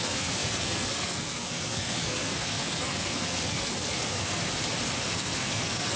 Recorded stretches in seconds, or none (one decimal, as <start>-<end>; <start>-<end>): 4.4-5.0